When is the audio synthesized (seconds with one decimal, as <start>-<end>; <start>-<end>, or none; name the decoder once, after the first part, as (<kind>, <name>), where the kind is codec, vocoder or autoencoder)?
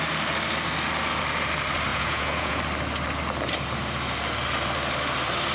1.9-2.6 (vocoder, Vocos)